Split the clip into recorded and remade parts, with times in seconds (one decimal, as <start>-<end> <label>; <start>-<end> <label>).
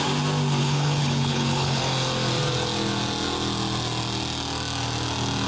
0.0-0.6 recorded; 0.6-1.8 remade; 1.8-5.5 recorded